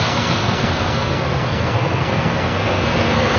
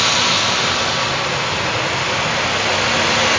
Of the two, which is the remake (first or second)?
first